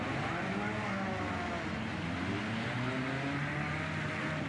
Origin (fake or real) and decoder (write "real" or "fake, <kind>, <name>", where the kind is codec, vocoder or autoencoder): real